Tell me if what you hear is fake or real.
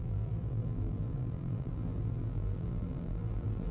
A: fake